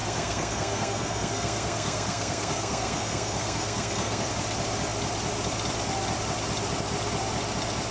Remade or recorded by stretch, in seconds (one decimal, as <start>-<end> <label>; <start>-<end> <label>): 0.0-4.3 remade; 4.3-7.9 recorded